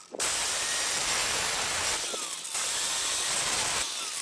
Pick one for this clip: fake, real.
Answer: real